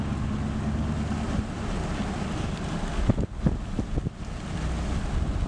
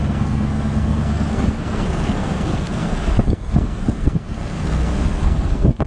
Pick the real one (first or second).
first